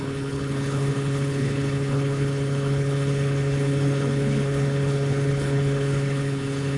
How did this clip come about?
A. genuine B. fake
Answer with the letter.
B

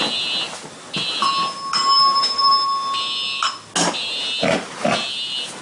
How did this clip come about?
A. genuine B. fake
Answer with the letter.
A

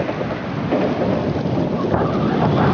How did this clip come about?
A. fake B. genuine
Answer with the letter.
B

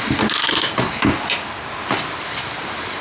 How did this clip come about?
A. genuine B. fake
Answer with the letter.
A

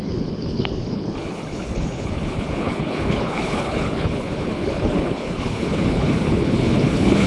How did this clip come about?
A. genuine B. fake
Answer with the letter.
B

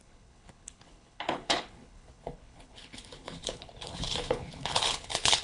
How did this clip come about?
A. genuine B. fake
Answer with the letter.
B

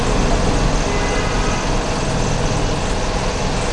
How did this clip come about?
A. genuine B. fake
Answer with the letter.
A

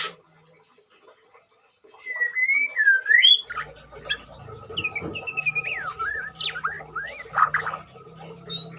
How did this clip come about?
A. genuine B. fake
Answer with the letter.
A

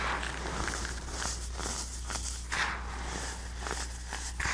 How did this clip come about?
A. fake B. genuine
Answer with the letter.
B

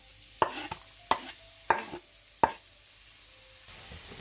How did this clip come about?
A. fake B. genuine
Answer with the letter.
B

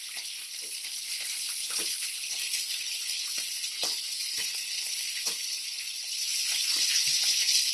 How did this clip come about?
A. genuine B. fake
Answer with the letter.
B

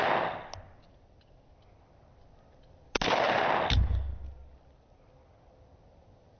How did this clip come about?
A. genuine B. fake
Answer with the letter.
A